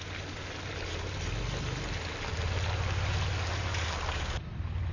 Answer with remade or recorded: recorded